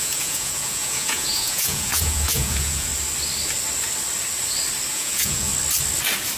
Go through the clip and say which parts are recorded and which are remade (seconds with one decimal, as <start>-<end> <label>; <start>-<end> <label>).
0.0-2.9 remade; 2.9-4.9 recorded; 4.9-5.5 remade; 5.5-6.4 recorded